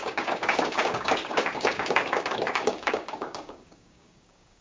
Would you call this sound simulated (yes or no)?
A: yes